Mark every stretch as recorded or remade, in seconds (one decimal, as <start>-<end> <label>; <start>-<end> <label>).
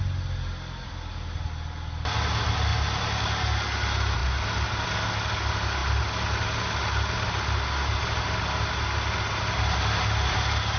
0.0-2.7 recorded; 2.7-3.5 remade; 3.5-10.8 recorded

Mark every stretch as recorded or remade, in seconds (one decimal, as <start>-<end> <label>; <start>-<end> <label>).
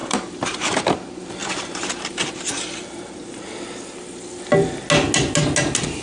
0.0-0.9 remade; 0.9-1.4 recorded; 1.4-2.4 remade; 2.4-6.0 recorded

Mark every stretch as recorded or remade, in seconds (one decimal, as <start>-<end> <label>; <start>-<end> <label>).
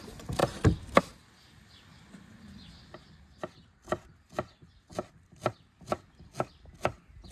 0.0-0.4 recorded; 0.4-1.0 remade; 1.0-7.3 recorded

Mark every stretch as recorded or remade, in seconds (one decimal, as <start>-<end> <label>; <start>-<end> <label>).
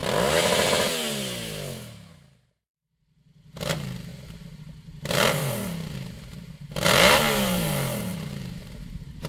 0.0-2.1 recorded; 2.1-9.3 remade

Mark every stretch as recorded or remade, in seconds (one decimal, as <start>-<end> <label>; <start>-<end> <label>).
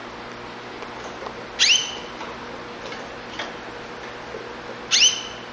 0.0-5.5 recorded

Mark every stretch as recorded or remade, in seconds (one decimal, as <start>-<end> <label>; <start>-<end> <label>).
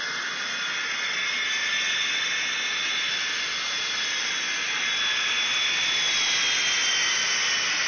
0.0-7.9 recorded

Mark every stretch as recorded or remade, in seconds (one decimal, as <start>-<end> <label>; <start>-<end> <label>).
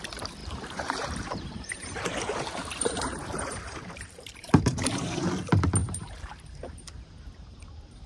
0.0-0.4 recorded; 0.4-5.3 remade; 5.3-5.8 recorded; 5.8-8.1 remade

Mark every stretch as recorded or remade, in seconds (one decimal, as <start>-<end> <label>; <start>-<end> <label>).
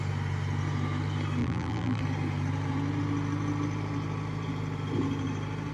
0.0-1.4 recorded; 1.4-2.0 remade; 2.0-5.7 recorded